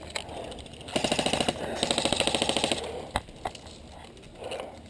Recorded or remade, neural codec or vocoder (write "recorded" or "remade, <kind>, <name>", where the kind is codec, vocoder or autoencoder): recorded